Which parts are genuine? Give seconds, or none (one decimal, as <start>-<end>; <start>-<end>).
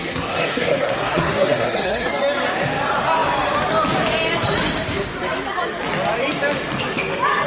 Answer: 2.1-7.5